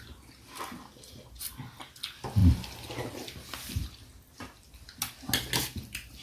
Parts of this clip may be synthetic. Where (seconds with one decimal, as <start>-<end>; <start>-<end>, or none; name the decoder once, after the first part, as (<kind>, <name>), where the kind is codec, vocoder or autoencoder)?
none